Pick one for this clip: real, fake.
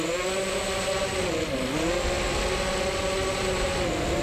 real